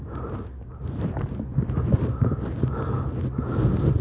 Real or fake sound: fake